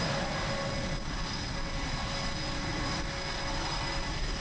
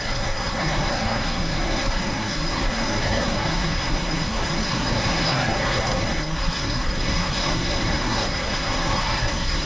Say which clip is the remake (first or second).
second